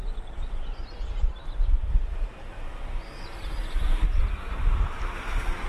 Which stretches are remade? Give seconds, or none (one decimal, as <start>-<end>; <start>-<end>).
0.0-3.9; 4.6-5.7